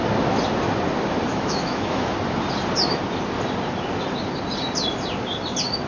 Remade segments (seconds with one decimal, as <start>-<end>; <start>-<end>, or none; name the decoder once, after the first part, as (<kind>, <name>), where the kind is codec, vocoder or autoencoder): 1.3-2.1 (autoencoder, DAC-VAE)